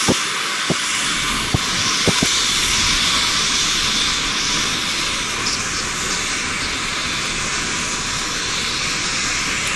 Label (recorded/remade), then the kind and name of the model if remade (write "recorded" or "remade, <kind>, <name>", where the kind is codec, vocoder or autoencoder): recorded